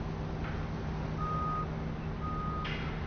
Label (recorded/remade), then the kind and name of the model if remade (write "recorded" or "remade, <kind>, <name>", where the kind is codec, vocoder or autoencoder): recorded